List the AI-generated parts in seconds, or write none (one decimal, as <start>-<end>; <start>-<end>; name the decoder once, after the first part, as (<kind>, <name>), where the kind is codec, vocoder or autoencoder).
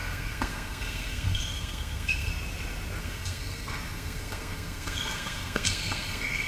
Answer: 0.0-2.3 (codec, SNAC); 3.0-6.5